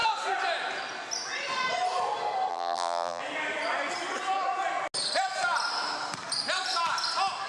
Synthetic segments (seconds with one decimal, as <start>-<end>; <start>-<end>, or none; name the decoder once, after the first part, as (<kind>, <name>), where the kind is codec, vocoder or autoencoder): 2.5-3.2 (vocoder, BigVGAN v2)